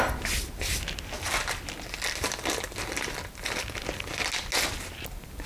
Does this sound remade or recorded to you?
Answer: recorded